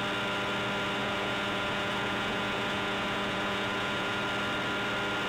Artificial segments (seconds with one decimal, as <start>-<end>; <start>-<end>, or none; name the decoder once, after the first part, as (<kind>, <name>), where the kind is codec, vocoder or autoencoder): 1.0-4.2 (vocoder, Vocos)